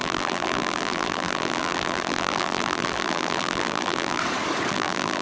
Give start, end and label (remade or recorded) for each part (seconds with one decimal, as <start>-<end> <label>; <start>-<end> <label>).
0.0-4.2 remade; 4.2-4.7 recorded; 4.7-5.2 remade